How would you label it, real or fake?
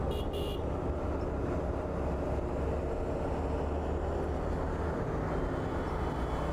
real